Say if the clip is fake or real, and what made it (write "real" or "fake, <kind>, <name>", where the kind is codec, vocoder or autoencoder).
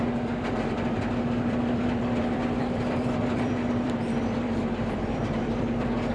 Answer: fake, vocoder, BigVGAN v2